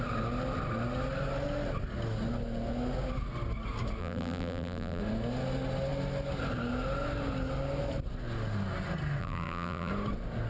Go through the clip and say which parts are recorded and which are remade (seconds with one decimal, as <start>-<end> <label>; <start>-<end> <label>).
0.0-4.0 recorded; 4.0-5.0 remade; 5.0-9.2 recorded; 9.2-9.9 remade; 9.9-10.5 recorded